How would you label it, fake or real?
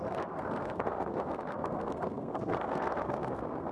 fake